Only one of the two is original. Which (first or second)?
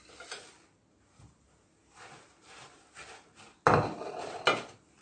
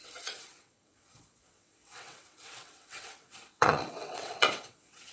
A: first